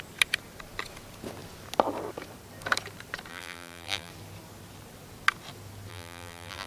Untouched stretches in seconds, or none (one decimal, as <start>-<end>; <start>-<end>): 0.0-3.3; 4.1-5.9